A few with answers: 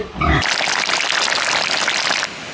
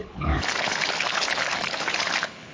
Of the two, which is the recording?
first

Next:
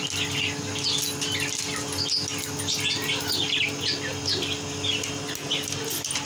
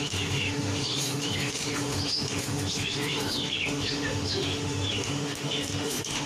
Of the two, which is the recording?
first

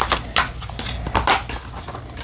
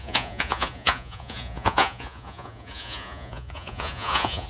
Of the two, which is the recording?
first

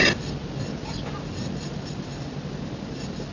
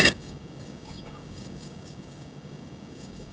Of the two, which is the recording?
first